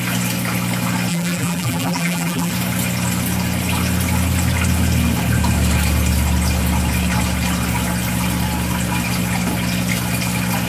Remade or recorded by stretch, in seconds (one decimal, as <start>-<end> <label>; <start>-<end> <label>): 0.0-1.1 recorded; 1.1-2.5 remade; 2.5-10.7 recorded